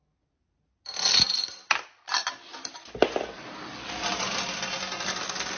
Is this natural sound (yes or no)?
yes